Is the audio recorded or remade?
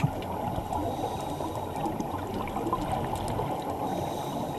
recorded